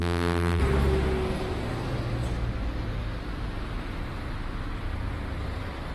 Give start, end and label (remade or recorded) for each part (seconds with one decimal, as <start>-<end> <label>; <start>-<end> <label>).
0.0-0.6 remade; 0.6-5.9 recorded